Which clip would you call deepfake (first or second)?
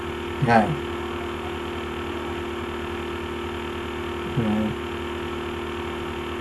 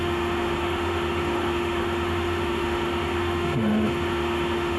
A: second